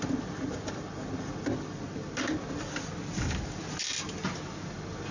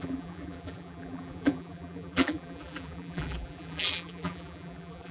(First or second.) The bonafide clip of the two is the first